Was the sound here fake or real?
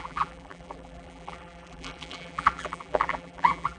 fake